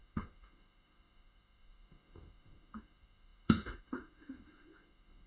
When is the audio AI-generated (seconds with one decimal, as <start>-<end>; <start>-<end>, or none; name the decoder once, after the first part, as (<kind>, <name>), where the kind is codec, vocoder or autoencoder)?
0.0-5.3 (autoencoder, DAC-VAE)